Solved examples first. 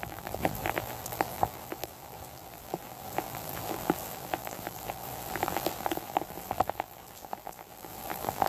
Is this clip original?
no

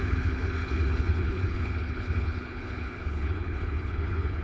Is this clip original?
no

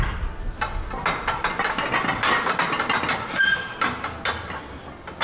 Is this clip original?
yes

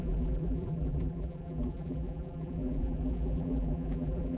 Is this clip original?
no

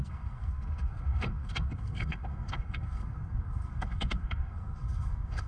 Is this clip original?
no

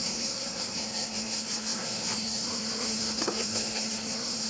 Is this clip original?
no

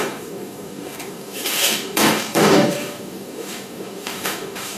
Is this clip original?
no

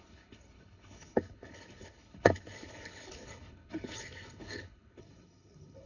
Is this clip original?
no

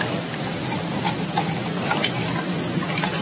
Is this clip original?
no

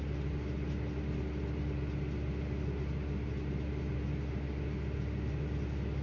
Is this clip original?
yes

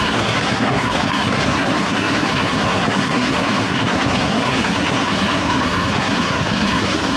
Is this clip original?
no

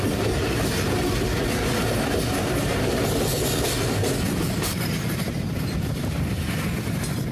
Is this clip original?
yes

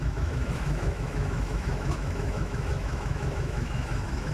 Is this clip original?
no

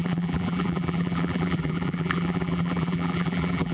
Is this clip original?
no